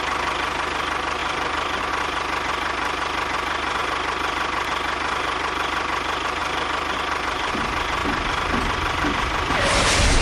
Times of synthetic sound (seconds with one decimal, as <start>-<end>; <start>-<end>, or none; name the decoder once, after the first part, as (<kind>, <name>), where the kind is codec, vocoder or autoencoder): 1.2-1.9 (vocoder, BigVGAN v2); 8.0-10.2